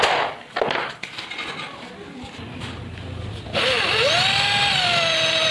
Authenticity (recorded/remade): recorded